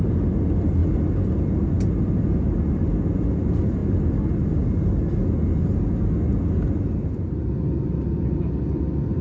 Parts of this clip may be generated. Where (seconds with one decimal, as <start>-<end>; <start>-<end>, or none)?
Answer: none